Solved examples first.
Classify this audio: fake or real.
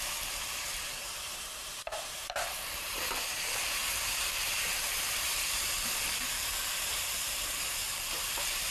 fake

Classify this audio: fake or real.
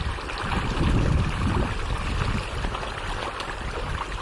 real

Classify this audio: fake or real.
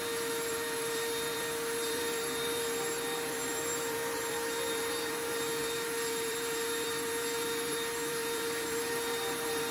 fake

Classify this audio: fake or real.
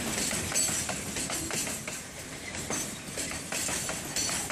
real